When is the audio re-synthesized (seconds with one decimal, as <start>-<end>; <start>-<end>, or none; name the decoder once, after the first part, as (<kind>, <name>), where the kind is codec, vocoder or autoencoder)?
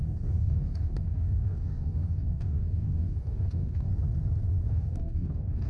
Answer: 0.0-3.9 (codec, DAC); 4.7-5.7